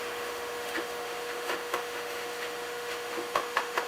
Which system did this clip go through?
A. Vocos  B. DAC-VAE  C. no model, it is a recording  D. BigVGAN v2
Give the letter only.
B